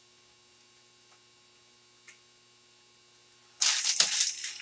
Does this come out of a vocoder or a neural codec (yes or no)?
no